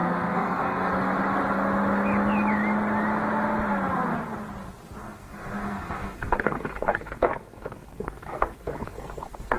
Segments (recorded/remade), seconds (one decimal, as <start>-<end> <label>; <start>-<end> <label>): 0.0-0.9 remade; 0.9-5.0 recorded; 5.0-9.6 remade